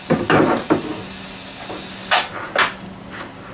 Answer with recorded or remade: recorded